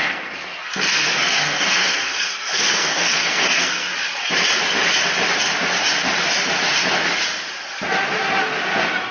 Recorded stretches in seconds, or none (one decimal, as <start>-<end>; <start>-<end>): 3.9-9.1